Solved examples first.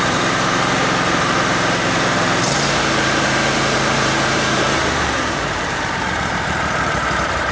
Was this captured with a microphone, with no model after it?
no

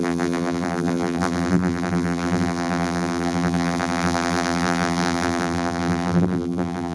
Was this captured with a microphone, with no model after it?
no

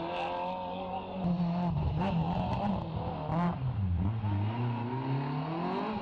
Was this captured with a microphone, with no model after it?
yes